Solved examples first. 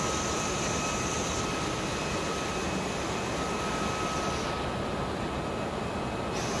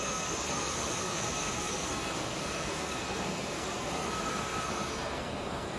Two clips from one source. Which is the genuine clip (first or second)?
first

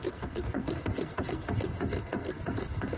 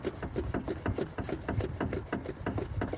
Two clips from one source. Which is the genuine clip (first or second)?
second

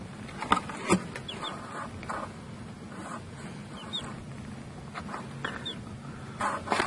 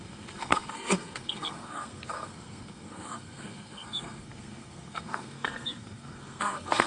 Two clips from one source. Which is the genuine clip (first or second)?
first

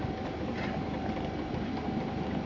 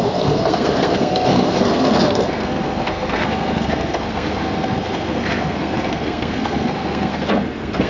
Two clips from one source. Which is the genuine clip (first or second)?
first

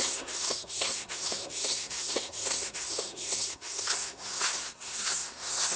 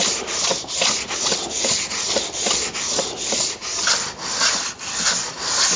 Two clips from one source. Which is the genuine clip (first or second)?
second